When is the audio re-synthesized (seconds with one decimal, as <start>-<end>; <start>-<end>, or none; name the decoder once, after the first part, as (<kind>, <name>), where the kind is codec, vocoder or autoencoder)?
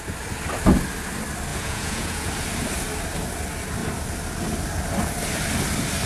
1.5-2.3 (vocoder, Vocos)